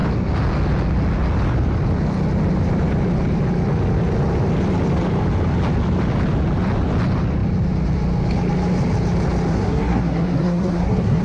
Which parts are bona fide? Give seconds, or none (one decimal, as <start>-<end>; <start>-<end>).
0.0-9.5